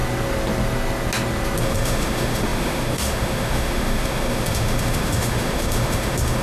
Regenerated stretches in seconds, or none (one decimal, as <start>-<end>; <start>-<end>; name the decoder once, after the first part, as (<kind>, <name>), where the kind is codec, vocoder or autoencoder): 1.6-6.4 (autoencoder, DAC-VAE)